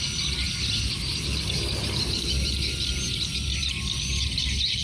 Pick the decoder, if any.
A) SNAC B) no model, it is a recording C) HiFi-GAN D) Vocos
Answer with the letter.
B